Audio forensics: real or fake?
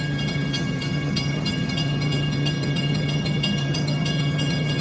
fake